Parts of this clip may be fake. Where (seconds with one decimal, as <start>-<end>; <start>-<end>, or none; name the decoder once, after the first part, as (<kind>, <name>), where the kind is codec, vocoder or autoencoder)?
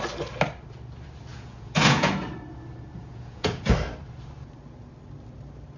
1.3-2.1 (vocoder, Vocos); 3.0-3.7